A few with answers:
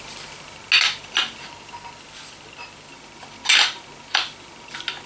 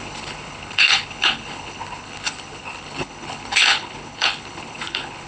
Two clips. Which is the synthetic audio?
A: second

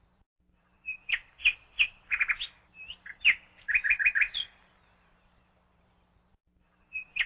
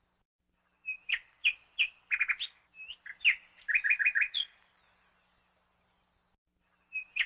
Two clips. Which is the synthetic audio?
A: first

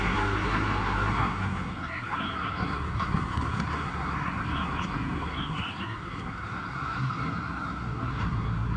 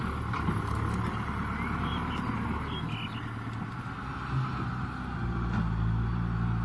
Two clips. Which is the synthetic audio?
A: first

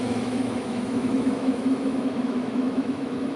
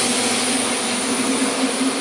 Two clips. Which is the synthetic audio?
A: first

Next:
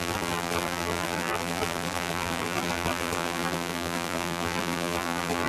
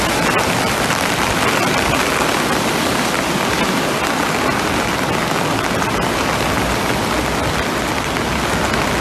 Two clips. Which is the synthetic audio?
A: first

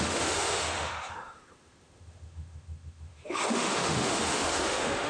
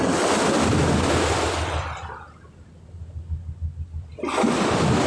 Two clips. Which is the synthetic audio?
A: first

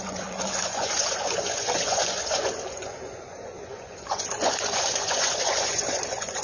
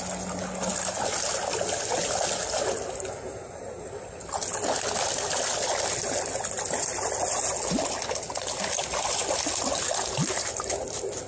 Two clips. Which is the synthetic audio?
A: first